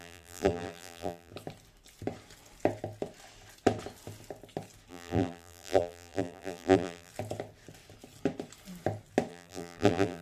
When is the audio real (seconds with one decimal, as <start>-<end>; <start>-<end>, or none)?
1.3-4.9; 7.1-9.3